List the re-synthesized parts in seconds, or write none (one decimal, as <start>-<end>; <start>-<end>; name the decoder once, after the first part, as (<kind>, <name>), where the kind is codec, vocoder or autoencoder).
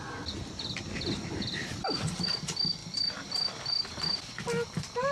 2.8-4.3 (vocoder, BigVGAN v2)